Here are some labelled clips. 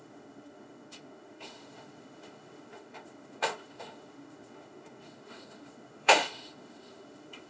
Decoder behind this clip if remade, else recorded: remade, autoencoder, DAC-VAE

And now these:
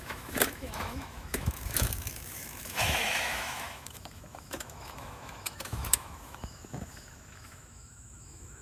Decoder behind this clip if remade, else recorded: remade, autoencoder, DAC-VAE